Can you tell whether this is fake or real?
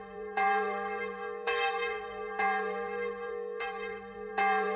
fake